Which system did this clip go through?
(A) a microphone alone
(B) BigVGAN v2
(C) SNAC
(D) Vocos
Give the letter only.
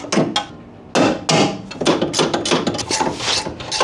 A